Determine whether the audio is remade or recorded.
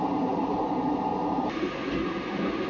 remade